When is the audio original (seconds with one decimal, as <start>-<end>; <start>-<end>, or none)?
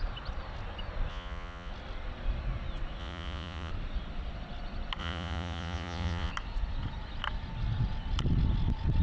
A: 0.0-1.1; 1.7-3.0; 3.7-5.0; 6.3-9.0